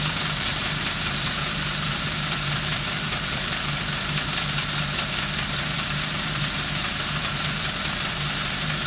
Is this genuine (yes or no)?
no